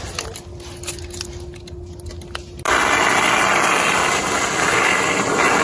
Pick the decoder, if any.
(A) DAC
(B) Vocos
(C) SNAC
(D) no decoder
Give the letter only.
D